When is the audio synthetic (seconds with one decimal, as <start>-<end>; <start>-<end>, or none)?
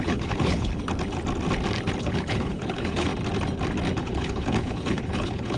0.0-0.8; 2.0-3.1; 4.0-5.6